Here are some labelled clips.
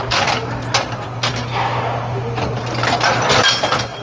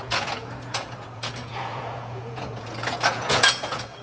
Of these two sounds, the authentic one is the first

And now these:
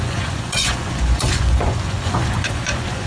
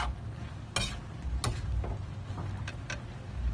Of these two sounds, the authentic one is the second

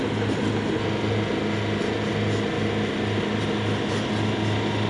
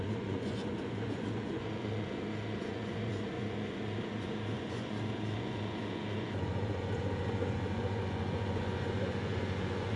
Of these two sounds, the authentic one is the first